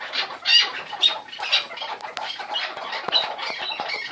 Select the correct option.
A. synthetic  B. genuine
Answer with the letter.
B